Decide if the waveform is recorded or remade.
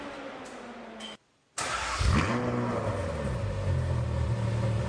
recorded